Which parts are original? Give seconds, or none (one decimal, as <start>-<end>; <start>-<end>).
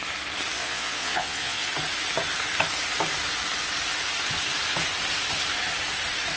0.0-0.6; 1.7-6.4